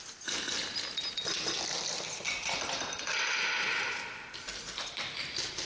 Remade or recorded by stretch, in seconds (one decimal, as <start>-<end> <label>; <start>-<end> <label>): 0.0-5.7 recorded